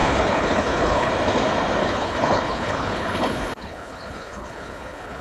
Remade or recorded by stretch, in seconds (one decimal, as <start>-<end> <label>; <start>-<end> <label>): 0.0-1.1 remade; 1.1-1.8 recorded; 1.8-5.2 remade

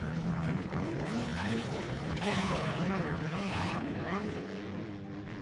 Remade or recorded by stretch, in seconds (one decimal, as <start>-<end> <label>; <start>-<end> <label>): 0.0-4.5 remade; 4.5-5.4 recorded

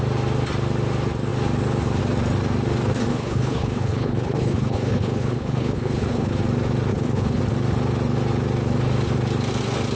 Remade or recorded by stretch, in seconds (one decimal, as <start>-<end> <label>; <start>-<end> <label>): 0.0-3.1 recorded; 3.1-6.4 remade; 6.4-6.9 recorded; 6.9-7.4 remade; 7.4-10.0 recorded

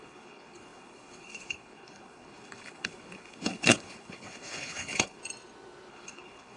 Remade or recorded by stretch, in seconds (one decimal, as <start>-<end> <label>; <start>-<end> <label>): 0.0-5.2 remade; 5.2-5.9 recorded; 5.9-6.6 remade

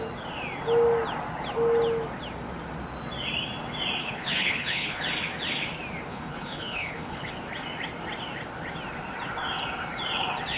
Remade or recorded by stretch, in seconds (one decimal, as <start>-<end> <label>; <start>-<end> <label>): 0.0-4.0 recorded; 4.0-5.0 remade; 5.0-6.1 recorded; 6.1-7.3 remade; 7.3-10.6 recorded